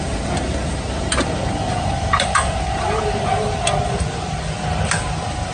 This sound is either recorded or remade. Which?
recorded